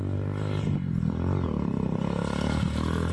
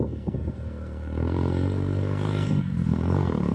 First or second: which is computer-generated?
second